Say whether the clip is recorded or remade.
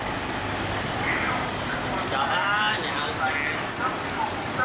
recorded